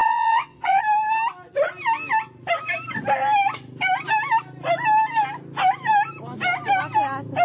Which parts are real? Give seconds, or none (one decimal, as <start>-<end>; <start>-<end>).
0.8-7.4